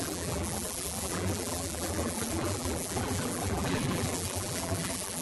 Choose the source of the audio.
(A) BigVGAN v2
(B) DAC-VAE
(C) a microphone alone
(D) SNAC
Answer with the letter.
A